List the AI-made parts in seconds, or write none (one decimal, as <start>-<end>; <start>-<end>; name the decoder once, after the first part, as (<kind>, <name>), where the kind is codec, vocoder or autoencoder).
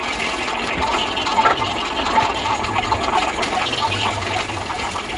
1.3-4.4 (vocoder, BigVGAN v2)